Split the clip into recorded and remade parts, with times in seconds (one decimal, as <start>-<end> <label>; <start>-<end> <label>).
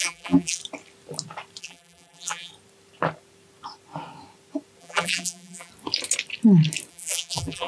0.0-0.6 remade; 0.6-1.6 recorded; 1.6-2.5 remade; 2.5-4.8 recorded; 4.8-5.7 remade; 5.7-6.9 recorded; 6.9-7.7 remade